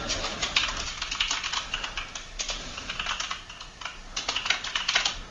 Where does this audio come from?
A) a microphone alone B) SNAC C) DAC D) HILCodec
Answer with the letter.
A